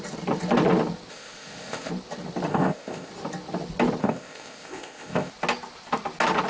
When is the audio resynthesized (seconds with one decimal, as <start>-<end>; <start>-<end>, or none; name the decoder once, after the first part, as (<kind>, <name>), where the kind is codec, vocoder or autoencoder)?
1.1-1.9 (codec, ZipCodec); 2.5-3.1; 4.0-5.3